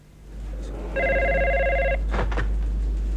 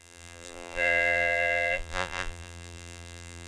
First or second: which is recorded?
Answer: first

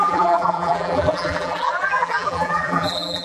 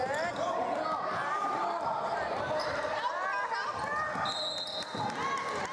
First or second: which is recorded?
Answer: second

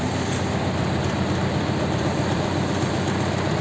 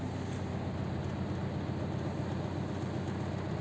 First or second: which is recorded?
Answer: second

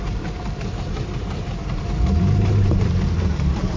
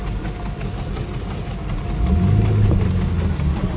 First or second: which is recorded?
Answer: second